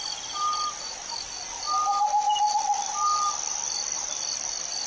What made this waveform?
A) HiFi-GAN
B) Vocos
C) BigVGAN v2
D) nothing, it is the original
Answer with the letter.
D